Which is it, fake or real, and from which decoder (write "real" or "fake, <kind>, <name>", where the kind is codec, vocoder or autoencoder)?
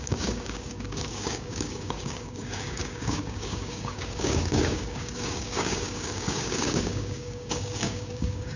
fake, codec, DAC